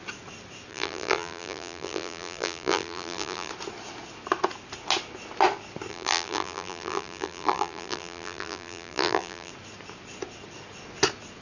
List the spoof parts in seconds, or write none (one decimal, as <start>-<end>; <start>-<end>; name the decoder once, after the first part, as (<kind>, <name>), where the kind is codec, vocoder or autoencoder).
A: 0.7-3.5 (vocoder, BigVGAN v2); 5.9-9.5